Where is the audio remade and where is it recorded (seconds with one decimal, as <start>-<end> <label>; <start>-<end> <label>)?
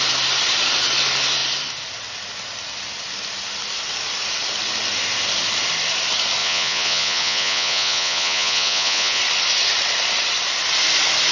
0.0-6.4 recorded; 6.4-9.2 remade; 9.2-11.3 recorded